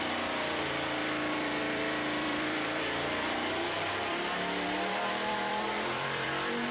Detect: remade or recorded remade